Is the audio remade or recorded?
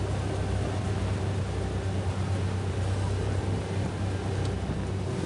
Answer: recorded